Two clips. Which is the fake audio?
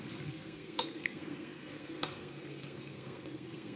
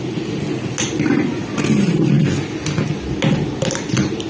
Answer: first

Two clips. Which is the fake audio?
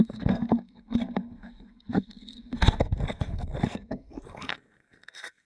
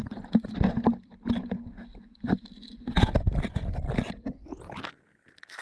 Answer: first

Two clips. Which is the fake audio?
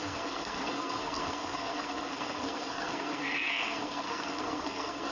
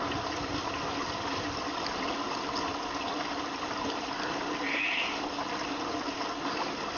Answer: first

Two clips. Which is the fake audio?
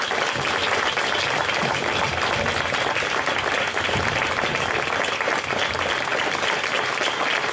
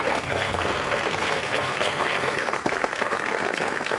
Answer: second